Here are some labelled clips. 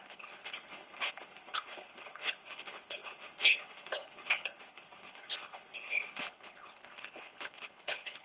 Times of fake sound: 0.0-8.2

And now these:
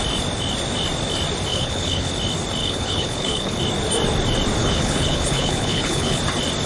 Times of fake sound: 1.5-2.1; 2.6-3.6; 4.6-6.2

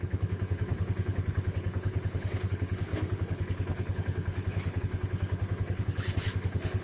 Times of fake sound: 0.0-6.8

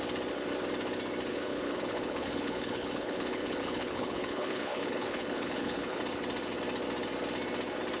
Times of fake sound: 1.3-6.0

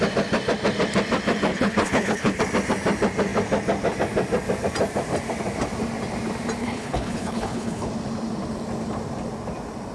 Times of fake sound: 1.5-2.4; 6.6-7.9